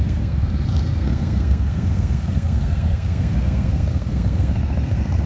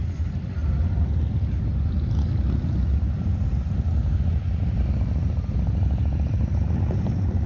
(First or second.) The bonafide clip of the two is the second